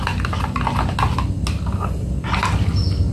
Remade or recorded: recorded